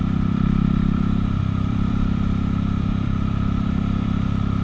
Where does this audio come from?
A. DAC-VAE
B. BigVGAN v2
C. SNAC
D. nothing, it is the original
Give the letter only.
B